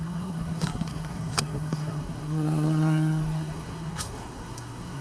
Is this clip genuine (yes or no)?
no